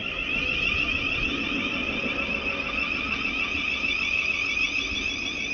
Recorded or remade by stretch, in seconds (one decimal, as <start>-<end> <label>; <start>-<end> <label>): 0.0-5.5 recorded